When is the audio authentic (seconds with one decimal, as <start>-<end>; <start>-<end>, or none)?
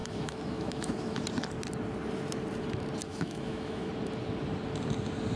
1.2-3.1; 3.9-5.4